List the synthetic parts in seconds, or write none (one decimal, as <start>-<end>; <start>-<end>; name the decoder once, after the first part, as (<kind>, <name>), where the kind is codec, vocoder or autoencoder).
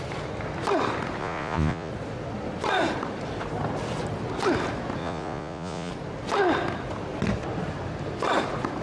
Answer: 1.2-1.9 (vocoder, Vocos); 5.0-5.9